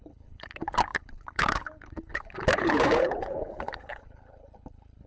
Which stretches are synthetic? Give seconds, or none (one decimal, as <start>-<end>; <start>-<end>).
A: 0.0-5.1